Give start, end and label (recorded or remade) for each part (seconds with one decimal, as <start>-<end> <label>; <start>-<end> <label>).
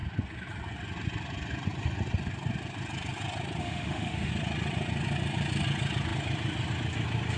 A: 0.0-3.6 recorded; 3.6-4.3 remade; 4.3-7.4 recorded